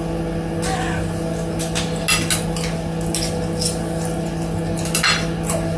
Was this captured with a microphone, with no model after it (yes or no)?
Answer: yes